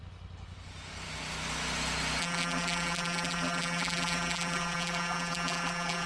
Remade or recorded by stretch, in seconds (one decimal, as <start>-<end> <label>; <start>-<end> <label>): 0.0-2.2 recorded; 2.2-6.1 remade